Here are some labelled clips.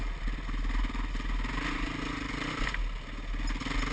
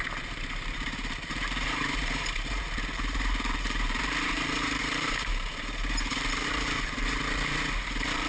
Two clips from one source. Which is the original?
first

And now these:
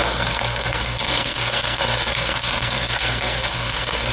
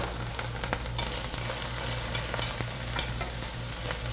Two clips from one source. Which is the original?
second